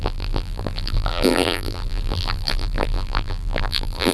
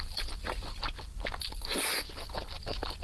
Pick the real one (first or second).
second